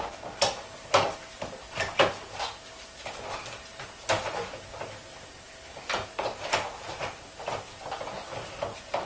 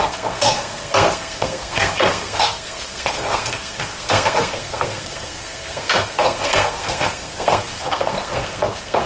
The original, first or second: first